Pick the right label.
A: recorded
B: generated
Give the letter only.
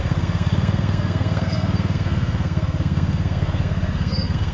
B